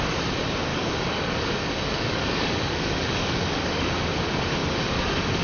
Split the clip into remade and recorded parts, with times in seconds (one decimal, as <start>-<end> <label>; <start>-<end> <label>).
0.0-0.7 recorded; 0.7-3.9 remade; 3.9-4.6 recorded; 4.6-5.4 remade